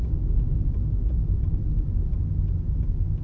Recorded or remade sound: recorded